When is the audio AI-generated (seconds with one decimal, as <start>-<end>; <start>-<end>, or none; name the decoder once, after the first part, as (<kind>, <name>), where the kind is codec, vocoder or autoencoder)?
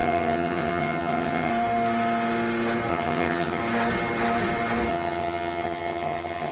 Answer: 0.0-1.5 (vocoder, HiFi-GAN); 2.9-3.6; 4.9-6.5